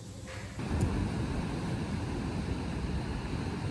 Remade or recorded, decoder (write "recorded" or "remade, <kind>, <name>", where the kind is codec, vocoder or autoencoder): recorded